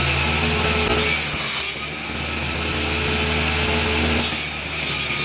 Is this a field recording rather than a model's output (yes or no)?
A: yes